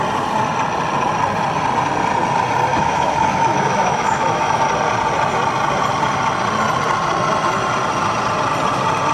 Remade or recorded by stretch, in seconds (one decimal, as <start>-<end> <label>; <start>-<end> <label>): 0.0-2.7 recorded; 2.7-4.6 remade; 4.6-9.1 recorded